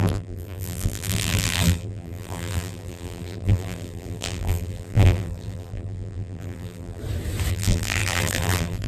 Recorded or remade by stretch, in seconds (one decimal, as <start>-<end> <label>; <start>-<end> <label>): 0.0-7.0 remade; 7.0-7.5 recorded; 7.5-8.9 remade